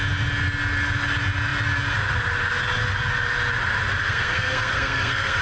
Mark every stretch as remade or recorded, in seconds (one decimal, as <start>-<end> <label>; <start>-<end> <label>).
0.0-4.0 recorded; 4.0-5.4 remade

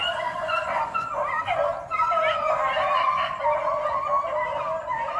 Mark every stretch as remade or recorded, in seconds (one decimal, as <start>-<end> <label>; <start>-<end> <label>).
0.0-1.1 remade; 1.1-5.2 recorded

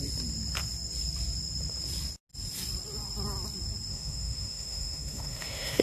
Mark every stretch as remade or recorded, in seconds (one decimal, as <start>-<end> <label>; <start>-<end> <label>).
0.0-3.9 recorded; 3.9-5.8 remade

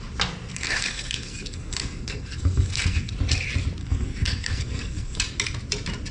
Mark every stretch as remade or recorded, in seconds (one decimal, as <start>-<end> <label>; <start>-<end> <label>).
0.0-0.5 recorded; 0.5-3.1 remade; 3.1-3.8 recorded; 3.8-5.2 remade; 5.2-6.1 recorded

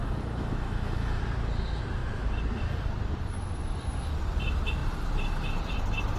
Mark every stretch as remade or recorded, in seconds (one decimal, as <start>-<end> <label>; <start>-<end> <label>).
0.0-1.2 remade; 1.2-6.2 recorded